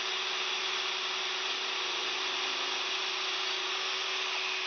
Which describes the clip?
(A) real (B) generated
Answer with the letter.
A